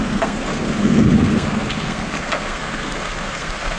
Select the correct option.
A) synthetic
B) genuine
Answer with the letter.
A